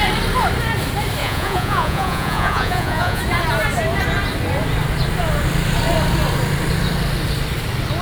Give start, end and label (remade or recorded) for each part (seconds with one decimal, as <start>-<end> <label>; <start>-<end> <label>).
0.0-1.2 recorded; 1.2-3.2 remade; 3.2-8.0 recorded